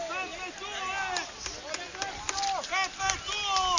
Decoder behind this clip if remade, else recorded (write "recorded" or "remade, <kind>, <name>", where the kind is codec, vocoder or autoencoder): recorded